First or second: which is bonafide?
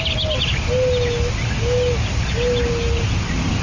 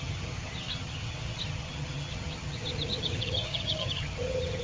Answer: first